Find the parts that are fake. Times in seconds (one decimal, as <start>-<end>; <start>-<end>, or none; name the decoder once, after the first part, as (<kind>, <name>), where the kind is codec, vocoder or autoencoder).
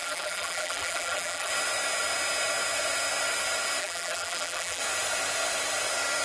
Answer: 0.0-1.5 (vocoder, BigVGAN v2); 3.8-4.8